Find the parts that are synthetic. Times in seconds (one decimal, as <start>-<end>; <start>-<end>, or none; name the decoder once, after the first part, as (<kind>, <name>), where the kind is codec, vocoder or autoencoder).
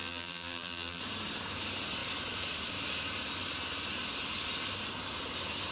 0.0-1.0 (vocoder, BigVGAN v2)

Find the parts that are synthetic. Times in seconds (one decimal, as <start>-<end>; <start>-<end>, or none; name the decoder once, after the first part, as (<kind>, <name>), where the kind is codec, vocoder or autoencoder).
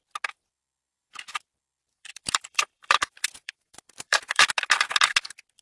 1.9-4.5 (vocoder, BigVGAN v2)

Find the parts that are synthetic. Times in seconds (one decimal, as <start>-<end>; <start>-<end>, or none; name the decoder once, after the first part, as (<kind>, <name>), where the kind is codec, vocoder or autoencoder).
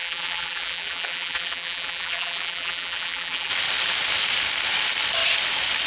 0.0-3.5 (vocoder, BigVGAN v2)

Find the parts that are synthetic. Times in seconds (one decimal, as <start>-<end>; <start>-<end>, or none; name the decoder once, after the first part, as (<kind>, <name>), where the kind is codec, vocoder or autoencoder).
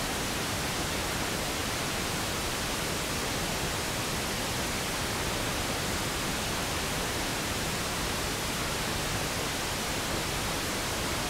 1.6-2.8 (vocoder, BigVGAN v2); 7.3-8.1